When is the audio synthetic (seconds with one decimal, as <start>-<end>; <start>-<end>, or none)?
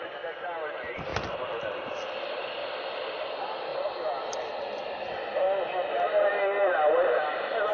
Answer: 1.1-2.1; 2.6-3.3; 3.7-5.2